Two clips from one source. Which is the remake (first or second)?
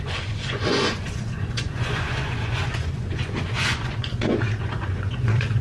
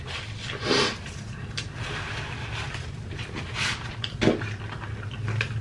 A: first